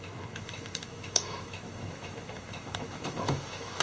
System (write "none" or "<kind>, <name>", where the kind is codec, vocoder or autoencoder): autoencoder, DAC-VAE